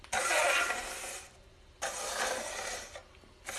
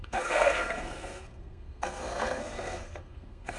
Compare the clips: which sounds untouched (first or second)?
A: first